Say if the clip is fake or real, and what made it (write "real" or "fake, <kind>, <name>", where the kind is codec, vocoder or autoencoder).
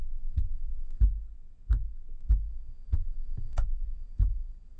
real